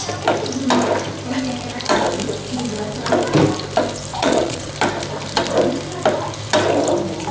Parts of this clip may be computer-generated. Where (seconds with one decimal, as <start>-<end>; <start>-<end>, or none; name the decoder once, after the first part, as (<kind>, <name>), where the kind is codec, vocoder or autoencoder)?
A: 4.1-4.7 (vocoder, Vocos)